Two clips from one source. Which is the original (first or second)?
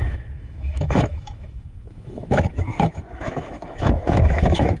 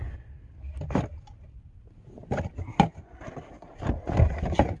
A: second